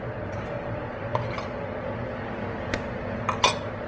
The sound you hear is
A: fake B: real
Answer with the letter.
B